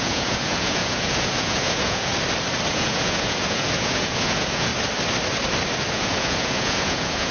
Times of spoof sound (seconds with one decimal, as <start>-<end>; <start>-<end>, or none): 0.0-2.1; 2.7-4.7; 5.9-7.3